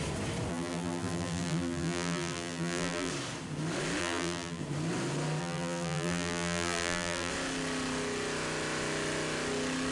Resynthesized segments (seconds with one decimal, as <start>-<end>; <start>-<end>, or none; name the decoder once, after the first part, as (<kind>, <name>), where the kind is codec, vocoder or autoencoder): 0.5-3.1 (vocoder, BigVGAN v2); 4.0-4.6; 5.4-7.3